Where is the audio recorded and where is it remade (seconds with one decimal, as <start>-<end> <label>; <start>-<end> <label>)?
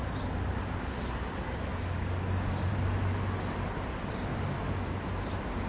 0.0-1.7 recorded; 1.7-2.7 remade; 2.7-5.7 recorded